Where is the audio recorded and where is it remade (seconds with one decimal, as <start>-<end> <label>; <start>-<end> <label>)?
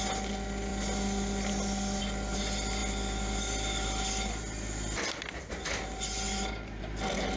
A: 0.0-7.4 recorded